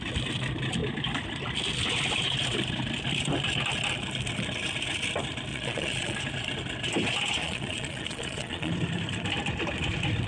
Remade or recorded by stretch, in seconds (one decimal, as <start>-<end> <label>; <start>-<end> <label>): 0.0-5.5 recorded; 5.5-6.2 remade; 6.2-7.4 recorded; 7.4-8.7 remade; 8.7-10.3 recorded